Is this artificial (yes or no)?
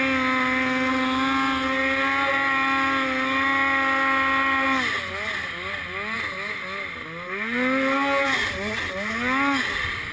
no